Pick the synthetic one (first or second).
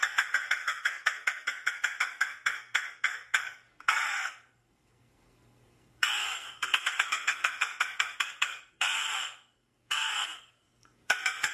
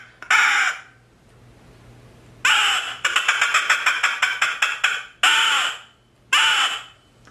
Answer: first